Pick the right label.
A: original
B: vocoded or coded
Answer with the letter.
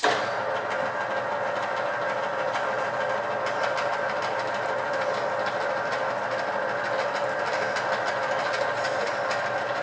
A